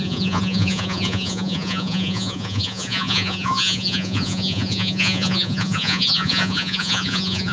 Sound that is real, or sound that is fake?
fake